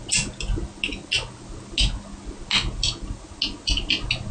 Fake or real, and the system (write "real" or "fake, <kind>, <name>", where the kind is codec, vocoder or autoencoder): real